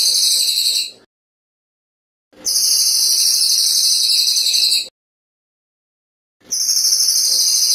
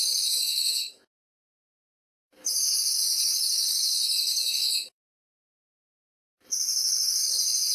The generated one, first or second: second